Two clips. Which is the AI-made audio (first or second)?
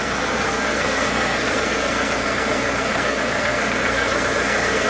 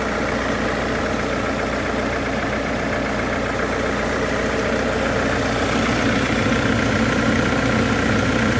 first